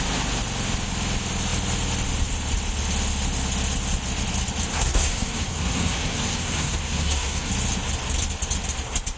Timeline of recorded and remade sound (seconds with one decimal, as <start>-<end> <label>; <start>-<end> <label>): 0.0-4.7 recorded; 4.7-7.5 remade; 7.5-9.2 recorded